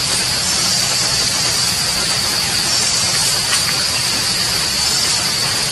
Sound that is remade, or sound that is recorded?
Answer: recorded